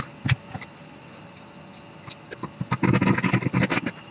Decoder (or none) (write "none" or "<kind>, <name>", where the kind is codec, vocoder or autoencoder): none